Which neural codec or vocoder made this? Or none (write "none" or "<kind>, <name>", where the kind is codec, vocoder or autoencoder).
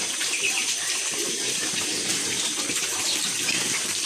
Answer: vocoder, BigVGAN v2